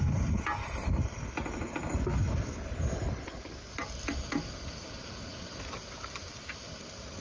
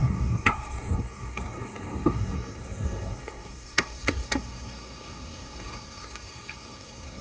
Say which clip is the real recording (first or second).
first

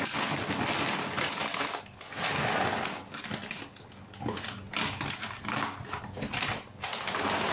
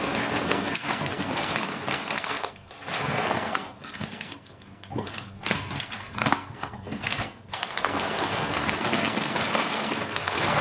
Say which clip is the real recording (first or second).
first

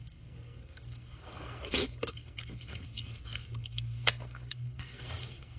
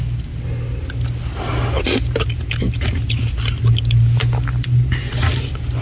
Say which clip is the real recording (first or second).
second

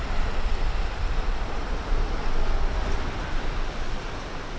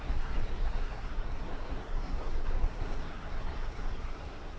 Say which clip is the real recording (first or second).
first